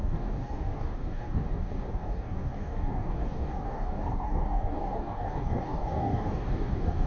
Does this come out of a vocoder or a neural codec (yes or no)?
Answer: yes